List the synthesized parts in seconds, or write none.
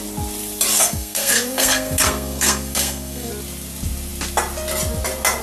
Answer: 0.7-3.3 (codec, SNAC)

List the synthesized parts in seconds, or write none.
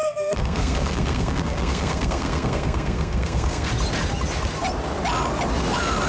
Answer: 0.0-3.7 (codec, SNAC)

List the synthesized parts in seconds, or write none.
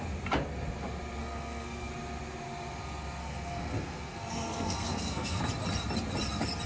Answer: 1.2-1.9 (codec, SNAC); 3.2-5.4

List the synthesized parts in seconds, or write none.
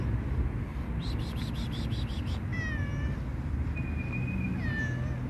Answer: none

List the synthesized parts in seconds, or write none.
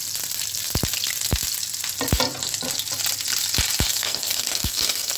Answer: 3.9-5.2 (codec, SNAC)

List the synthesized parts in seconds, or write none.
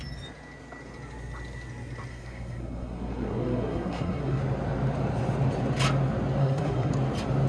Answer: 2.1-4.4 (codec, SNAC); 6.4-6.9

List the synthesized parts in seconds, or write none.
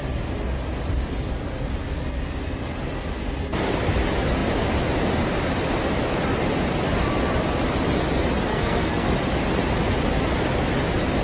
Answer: 8.5-9.1 (codec, SNAC)